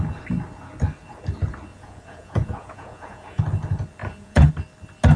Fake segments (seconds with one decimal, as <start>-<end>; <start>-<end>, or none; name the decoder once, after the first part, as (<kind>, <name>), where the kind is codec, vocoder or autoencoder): 1.7-3.4 (vocoder, Vocos); 4.0-4.5